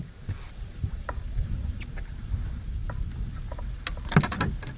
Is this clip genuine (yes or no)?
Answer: yes